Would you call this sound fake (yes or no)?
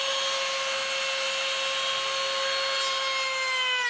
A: no